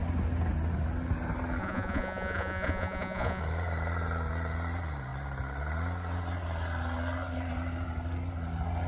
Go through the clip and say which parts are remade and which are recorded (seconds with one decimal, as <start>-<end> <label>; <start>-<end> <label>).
0.0-1.6 recorded; 1.6-3.4 remade; 3.4-8.9 recorded

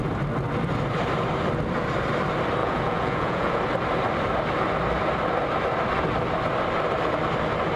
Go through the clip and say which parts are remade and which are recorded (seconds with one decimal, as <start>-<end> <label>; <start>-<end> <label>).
0.0-2.6 recorded; 2.6-3.6 remade; 3.6-7.8 recorded

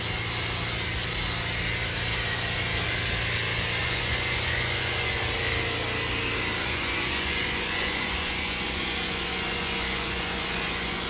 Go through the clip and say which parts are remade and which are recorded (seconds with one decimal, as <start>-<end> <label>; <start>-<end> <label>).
0.0-3.8 recorded; 3.8-5.2 remade; 5.2-6.6 recorded; 6.6-11.1 remade

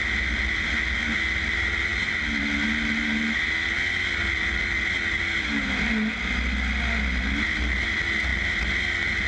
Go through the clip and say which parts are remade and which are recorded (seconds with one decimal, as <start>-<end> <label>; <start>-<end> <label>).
0.0-9.3 recorded